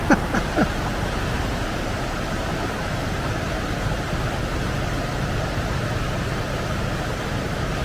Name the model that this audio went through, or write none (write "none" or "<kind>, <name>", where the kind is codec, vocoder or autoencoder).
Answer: vocoder, BigVGAN v2